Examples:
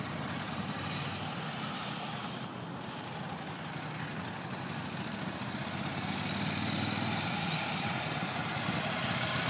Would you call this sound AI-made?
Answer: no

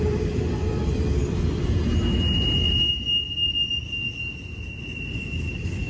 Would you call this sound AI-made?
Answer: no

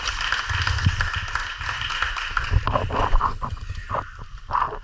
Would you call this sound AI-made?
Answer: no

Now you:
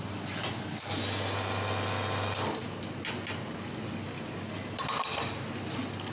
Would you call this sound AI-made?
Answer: no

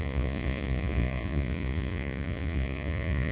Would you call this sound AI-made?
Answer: yes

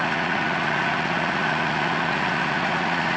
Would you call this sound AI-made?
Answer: yes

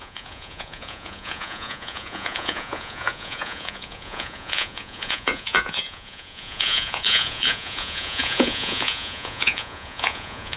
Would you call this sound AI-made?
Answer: yes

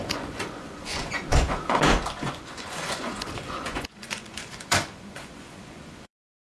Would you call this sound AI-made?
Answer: yes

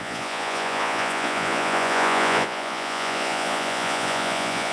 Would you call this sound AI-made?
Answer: yes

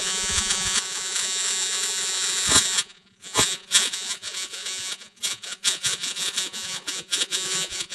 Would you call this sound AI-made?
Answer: yes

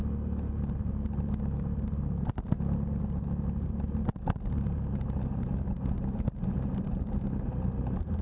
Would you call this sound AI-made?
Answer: no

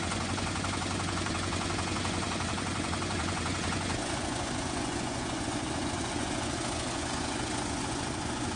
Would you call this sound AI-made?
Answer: yes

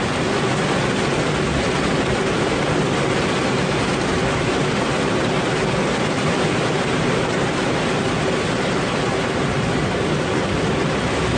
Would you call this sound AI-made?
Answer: no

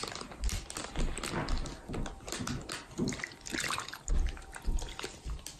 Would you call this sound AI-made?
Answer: no